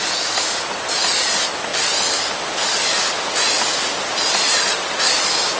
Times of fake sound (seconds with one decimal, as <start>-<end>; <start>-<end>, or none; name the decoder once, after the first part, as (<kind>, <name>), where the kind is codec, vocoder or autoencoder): none